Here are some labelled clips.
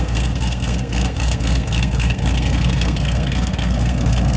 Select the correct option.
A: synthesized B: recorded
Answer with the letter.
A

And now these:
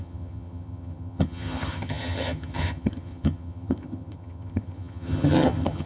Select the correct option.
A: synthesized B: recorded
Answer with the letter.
A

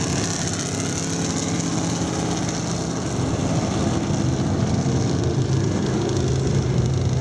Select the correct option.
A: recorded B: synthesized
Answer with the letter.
A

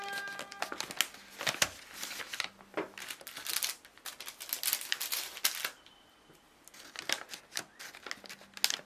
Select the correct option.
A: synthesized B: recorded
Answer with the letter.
B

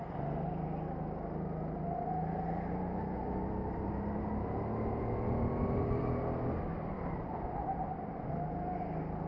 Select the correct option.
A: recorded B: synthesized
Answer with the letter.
A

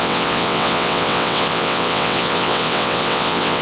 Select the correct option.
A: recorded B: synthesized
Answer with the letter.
B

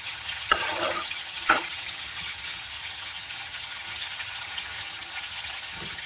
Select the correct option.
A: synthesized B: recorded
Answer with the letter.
A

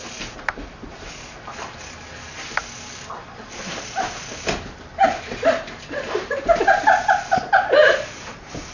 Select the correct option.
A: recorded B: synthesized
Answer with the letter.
A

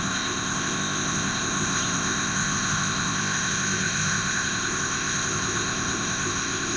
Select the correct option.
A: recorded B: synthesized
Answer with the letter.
B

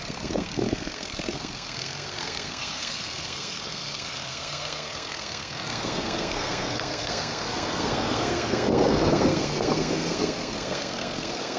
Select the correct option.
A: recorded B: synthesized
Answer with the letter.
B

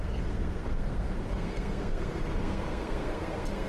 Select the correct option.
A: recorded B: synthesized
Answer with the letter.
B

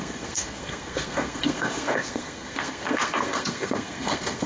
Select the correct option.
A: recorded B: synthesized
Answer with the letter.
B